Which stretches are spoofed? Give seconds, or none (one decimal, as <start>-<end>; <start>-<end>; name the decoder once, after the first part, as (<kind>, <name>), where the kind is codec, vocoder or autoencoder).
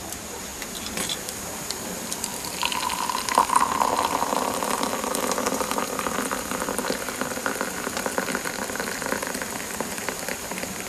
0.0-0.5 (vocoder, BigVGAN v2); 1.4-2.3; 6.1-10.9